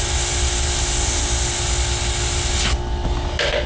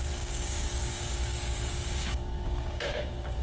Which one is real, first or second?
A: first